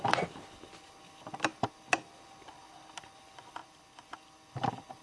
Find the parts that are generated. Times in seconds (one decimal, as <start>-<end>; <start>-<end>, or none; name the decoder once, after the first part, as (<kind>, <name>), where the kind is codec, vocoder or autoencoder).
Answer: none